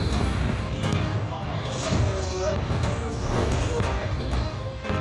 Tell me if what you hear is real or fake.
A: fake